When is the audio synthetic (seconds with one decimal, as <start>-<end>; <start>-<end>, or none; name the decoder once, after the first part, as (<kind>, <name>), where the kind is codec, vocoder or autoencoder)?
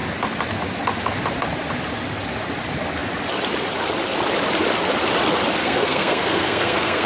5.6-7.1 (codec, SNAC)